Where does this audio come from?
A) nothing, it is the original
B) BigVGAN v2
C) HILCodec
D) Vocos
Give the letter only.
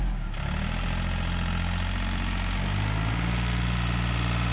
A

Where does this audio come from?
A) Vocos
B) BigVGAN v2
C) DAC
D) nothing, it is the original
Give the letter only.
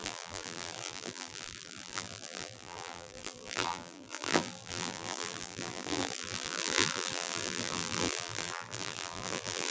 B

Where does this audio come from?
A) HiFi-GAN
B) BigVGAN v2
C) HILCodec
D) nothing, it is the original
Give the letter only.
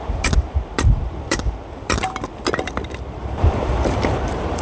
B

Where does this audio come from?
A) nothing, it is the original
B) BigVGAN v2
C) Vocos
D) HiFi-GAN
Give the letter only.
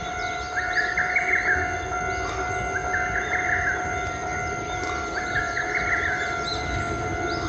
A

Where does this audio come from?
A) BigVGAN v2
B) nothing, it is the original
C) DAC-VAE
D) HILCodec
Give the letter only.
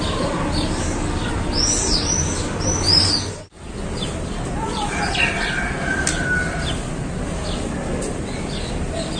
B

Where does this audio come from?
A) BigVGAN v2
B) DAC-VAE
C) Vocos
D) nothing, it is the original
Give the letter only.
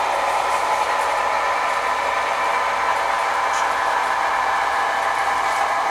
D